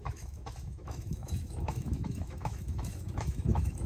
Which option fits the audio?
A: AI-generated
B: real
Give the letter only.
A